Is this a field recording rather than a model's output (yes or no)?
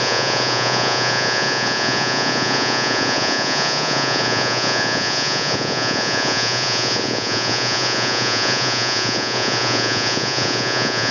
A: no